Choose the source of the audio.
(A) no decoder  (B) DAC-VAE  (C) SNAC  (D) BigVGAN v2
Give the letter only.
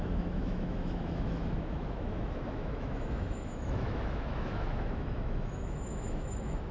B